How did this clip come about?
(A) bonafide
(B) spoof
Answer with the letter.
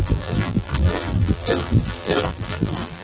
B